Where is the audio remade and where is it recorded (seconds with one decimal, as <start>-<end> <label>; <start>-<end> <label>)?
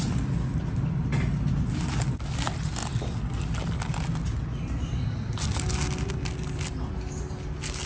0.0-7.9 recorded